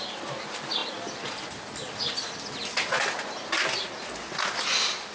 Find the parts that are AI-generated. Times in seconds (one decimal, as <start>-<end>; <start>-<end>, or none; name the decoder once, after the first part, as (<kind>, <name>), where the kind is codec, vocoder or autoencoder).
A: none